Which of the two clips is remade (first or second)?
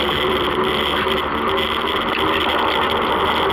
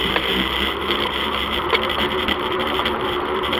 second